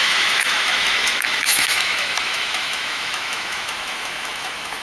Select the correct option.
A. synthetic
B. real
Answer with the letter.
A